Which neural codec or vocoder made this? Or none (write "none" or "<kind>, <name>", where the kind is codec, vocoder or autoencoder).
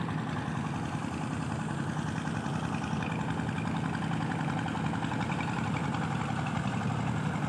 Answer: none